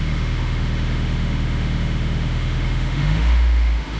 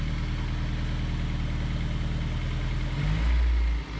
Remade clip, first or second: first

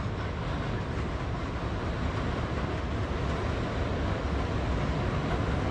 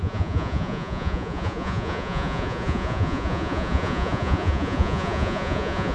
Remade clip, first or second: second